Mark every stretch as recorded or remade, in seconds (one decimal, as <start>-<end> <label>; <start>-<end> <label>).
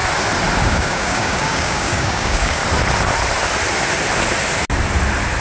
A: 0.0-0.6 recorded; 0.6-2.6 remade; 2.6-5.4 recorded